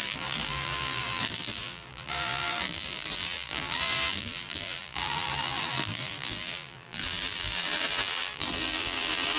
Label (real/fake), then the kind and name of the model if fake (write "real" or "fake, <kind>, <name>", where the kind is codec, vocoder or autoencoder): fake, vocoder, BigVGAN v2